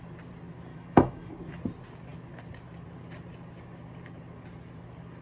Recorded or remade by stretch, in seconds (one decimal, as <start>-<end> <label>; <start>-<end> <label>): 0.0-0.7 recorded; 0.7-1.3 remade; 1.3-5.2 recorded